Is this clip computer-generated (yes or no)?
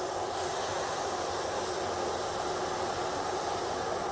no